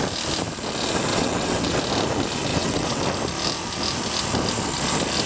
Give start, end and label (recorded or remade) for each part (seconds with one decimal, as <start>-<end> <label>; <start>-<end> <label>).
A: 0.0-1.1 recorded; 1.1-1.8 remade; 1.8-2.5 recorded; 2.5-3.0 remade; 3.0-5.3 recorded